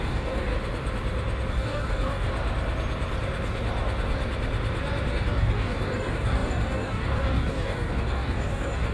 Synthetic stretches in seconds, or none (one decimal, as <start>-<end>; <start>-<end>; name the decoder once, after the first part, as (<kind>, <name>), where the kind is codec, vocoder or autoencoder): 0.0-0.5 (codec, DAC); 1.5-2.3; 5.1-8.9